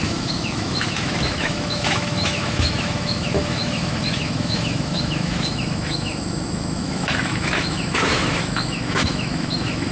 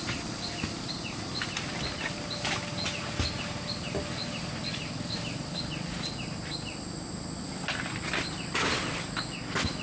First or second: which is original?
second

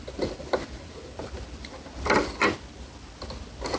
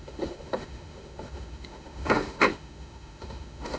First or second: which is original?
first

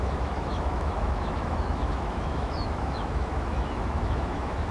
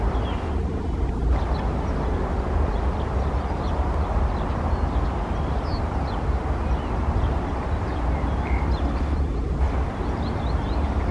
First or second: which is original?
second